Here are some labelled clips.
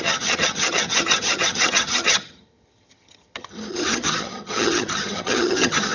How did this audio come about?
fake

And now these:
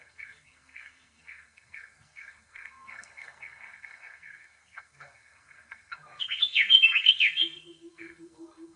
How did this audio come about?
fake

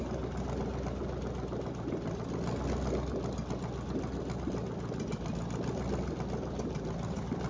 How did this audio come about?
real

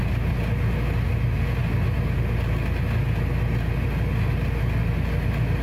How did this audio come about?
real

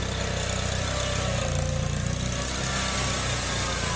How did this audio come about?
real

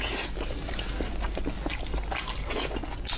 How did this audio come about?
real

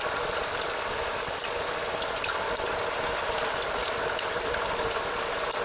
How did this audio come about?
real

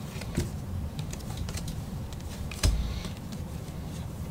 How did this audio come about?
fake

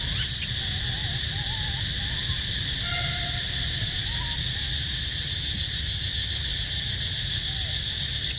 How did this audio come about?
real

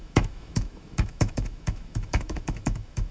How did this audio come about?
fake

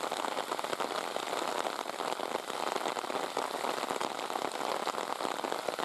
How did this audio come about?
real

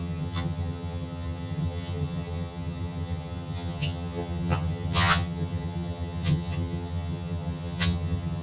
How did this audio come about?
fake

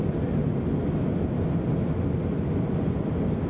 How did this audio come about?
real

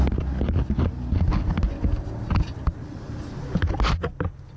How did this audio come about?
real